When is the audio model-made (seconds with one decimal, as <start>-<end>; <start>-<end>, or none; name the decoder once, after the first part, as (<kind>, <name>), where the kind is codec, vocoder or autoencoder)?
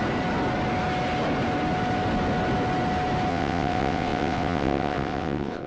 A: 3.3-5.7 (vocoder, WaveNeXt)